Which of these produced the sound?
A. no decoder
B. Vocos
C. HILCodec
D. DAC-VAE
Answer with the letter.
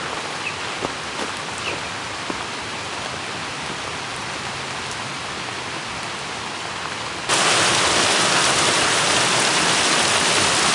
A